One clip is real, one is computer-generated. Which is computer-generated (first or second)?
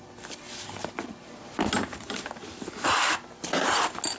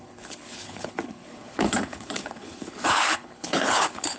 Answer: second